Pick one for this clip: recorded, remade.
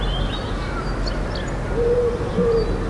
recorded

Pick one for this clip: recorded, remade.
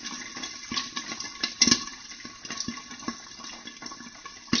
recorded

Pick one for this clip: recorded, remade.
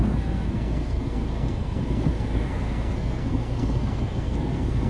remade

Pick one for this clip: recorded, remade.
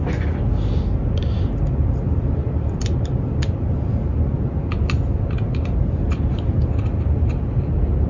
recorded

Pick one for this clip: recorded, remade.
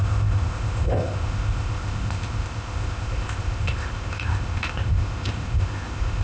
remade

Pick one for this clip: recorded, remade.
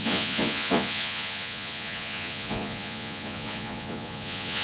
remade